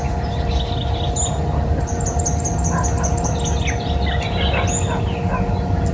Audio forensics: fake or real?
real